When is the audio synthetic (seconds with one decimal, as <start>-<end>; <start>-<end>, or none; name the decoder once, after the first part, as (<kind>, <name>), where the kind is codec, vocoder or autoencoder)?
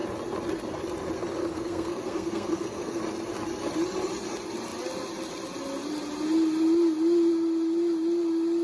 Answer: 1.4-3.0 (codec, SNAC)